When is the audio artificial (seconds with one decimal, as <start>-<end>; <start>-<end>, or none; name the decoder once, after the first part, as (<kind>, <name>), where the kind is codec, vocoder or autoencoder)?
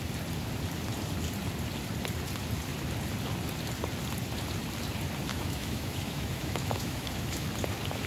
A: 5.3-7.5 (autoencoder, DAC-VAE)